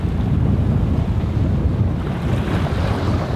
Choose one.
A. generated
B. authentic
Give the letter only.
B